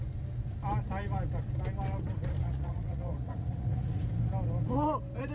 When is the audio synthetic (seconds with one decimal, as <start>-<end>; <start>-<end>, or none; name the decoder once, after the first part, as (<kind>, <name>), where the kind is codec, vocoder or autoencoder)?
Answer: 2.4-4.0 (vocoder, Vocos)